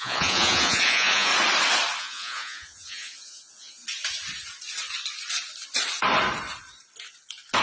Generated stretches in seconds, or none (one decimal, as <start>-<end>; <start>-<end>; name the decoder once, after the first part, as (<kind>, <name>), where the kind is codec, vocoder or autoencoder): 0.0-1.3 (vocoder, Vocos); 2.0-3.8